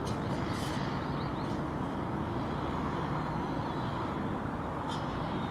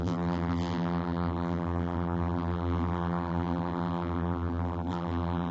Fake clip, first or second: second